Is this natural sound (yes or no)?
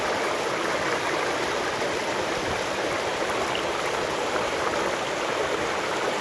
yes